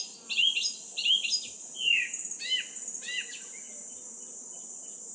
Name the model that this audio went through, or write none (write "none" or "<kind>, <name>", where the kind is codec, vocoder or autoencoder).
none